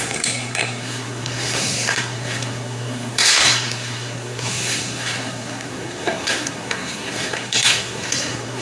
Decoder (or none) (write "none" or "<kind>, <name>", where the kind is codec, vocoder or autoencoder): codec, SNAC